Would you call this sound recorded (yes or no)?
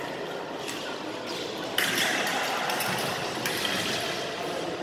yes